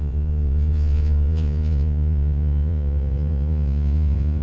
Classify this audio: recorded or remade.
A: remade